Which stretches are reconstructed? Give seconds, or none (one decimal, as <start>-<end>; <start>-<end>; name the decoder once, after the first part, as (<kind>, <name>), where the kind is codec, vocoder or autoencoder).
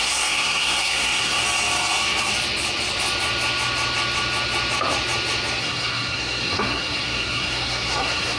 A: 0.0-1.4 (codec, SNAC); 5.6-8.4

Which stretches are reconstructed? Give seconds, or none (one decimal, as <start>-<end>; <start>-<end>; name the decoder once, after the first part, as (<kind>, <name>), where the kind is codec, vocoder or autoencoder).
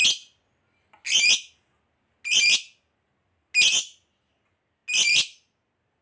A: none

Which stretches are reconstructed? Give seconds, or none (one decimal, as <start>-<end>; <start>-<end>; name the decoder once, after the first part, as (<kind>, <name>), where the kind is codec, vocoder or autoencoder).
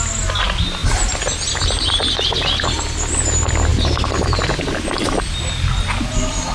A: none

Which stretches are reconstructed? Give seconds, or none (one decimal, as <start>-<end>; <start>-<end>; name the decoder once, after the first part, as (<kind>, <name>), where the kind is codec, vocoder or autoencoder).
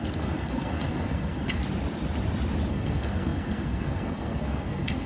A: 0.0-1.6 (codec, SNAC); 2.7-5.1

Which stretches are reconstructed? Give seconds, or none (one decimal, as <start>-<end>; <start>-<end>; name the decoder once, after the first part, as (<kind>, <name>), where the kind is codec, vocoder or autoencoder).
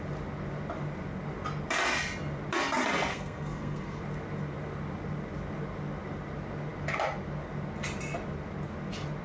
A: 3.1-4.0 (codec, SNAC)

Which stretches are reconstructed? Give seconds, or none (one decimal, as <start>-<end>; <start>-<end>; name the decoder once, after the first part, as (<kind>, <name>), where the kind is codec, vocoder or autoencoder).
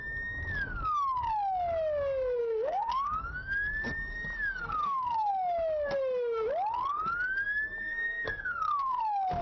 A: 2.4-3.2 (codec, SNAC); 4.6-5.3; 7.8-9.0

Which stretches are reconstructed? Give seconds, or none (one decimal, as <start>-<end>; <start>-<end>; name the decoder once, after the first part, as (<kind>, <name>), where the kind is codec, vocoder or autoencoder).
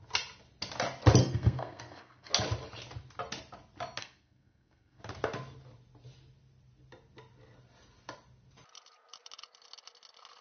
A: 1.2-2.3 (codec, SNAC); 4.0-5.0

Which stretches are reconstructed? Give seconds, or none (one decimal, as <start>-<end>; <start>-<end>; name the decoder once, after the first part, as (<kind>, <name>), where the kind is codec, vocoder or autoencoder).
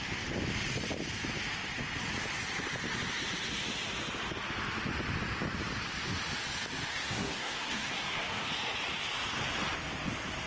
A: 6.9-8.5 (codec, SNAC)